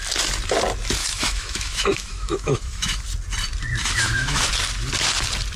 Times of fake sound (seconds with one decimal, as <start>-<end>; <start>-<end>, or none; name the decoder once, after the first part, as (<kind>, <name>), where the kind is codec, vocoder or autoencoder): 1.0-3.0 (autoencoder, DAC-VAE); 3.8-4.4